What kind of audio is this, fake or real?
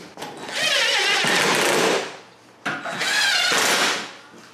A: real